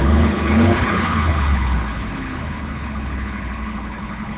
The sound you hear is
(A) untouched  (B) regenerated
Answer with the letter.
B